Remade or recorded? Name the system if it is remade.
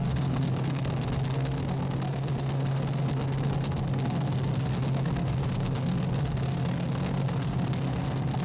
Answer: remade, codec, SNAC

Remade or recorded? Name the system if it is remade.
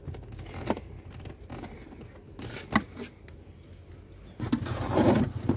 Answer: recorded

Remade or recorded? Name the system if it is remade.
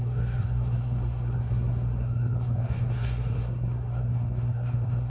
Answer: remade, codec, SNAC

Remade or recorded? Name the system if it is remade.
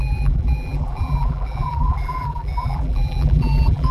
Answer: remade, vocoder, BigVGAN v2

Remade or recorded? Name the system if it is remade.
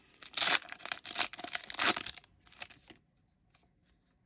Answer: recorded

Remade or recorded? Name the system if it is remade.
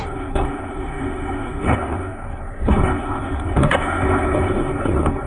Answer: remade, codec, SNAC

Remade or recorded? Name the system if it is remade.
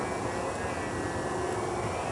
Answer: recorded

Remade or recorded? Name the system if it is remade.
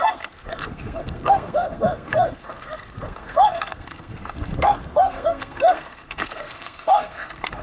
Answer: remade, codec, SNAC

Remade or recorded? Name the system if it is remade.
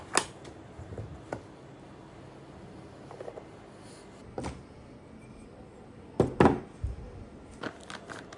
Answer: recorded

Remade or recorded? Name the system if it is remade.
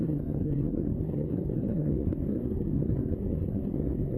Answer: remade, codec, SNAC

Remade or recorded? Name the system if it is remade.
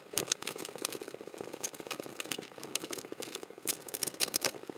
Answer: remade, codec, SNAC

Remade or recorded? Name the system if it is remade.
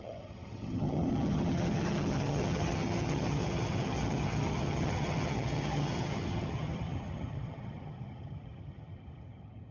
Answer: remade, vocoder, HiFi-GAN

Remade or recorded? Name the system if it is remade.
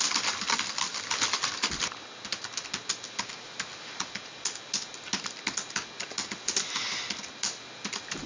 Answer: recorded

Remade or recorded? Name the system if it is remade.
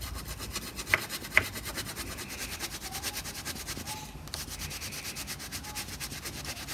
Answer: recorded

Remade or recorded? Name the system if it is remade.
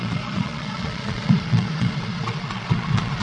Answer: remade, vocoder, Vocos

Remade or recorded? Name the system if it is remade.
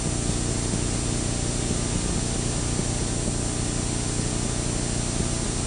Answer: recorded